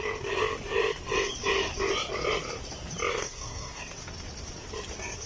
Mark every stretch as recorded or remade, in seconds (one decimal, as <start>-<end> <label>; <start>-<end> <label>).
0.0-3.1 recorded; 3.1-3.8 remade; 3.8-5.3 recorded